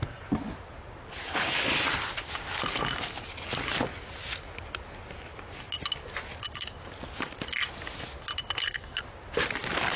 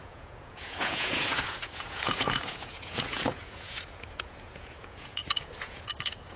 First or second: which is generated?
second